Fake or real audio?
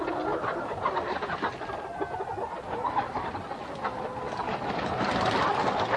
real